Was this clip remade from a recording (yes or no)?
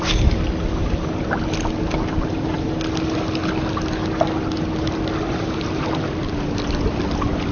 no